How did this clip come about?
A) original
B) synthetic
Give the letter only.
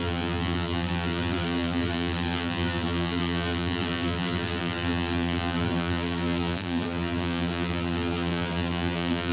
B